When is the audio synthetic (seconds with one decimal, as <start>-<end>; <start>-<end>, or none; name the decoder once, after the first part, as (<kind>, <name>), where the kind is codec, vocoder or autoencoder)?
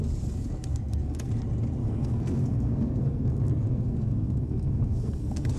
0.7-1.3 (codec, SNAC); 1.8-5.6